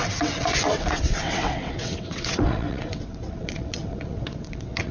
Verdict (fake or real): fake